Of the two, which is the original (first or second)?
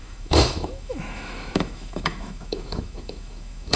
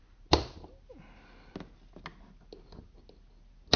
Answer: second